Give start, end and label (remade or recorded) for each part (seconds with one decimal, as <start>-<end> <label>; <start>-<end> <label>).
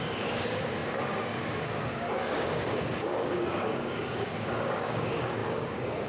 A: 0.0-6.1 remade